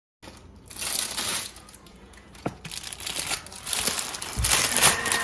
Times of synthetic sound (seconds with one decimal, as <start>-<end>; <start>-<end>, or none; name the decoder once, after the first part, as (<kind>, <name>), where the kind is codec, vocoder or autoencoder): 1.3-2.6 (vocoder, Vocos)